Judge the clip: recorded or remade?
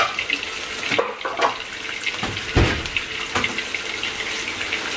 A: recorded